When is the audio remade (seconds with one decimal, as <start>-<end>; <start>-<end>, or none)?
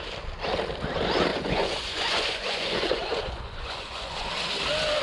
1.3-4.3